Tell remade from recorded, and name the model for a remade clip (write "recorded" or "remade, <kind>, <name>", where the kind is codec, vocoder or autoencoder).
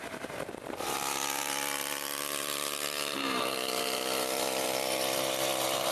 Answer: remade, vocoder, BigVGAN v2